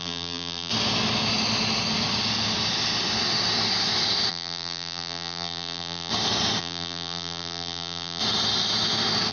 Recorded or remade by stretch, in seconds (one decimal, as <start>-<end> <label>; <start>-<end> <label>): 0.0-0.7 remade; 0.7-4.3 recorded; 4.3-6.1 remade; 6.1-6.6 recorded; 6.6-8.2 remade; 8.2-9.3 recorded